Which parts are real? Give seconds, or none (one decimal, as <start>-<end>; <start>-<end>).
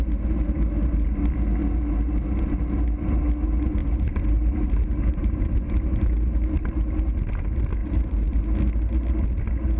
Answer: 0.0-3.8; 6.1-7.8; 8.4-9.8